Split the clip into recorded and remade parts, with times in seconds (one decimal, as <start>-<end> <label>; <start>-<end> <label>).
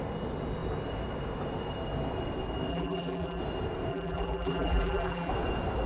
0.0-2.7 recorded; 2.7-3.4 remade; 3.4-3.9 recorded; 3.9-5.3 remade; 5.3-5.9 recorded